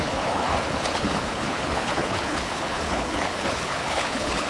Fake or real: fake